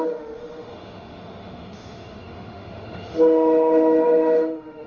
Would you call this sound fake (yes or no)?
yes